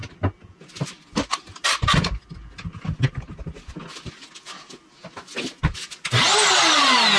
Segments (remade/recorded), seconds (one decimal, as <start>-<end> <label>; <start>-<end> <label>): 0.0-7.2 recorded